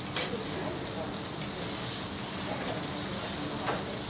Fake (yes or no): no